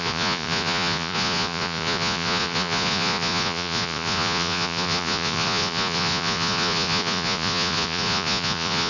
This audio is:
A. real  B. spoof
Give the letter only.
B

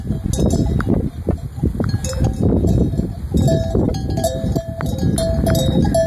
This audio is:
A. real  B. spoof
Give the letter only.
A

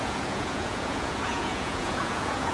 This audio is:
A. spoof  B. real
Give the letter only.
A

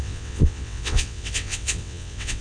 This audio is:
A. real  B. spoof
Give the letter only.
B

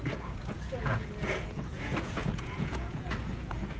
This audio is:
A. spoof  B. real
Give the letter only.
A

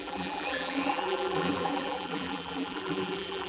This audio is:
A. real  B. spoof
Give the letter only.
B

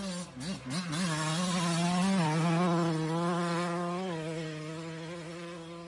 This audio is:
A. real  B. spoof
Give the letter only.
A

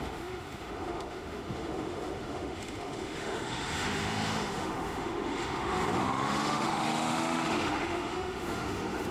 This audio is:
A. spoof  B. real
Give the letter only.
A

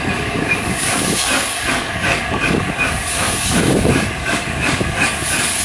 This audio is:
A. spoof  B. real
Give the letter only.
A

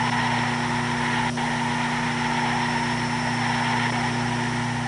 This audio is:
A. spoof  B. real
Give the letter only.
B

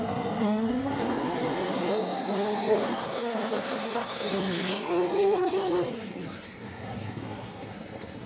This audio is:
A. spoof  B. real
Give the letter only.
A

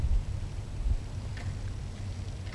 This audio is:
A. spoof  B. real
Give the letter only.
B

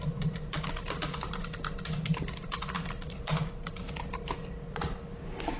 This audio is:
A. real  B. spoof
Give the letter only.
A